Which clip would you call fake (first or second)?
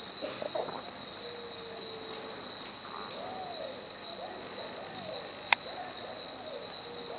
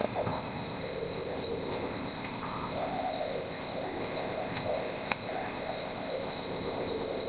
second